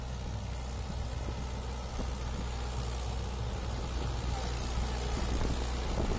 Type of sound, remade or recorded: recorded